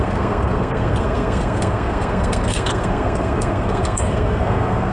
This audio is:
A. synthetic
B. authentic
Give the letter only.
A